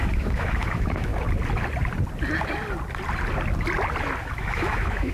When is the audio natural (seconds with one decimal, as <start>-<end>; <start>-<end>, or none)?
1.1-4.2